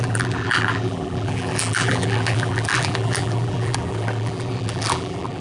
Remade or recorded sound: remade